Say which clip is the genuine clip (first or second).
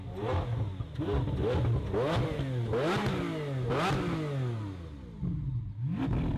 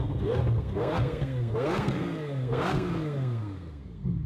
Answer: first